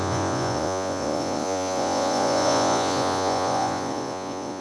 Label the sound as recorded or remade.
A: remade